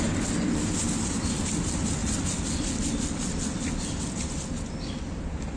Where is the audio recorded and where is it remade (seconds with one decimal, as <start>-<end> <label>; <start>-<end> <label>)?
0.0-5.6 recorded